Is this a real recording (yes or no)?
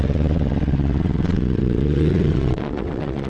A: no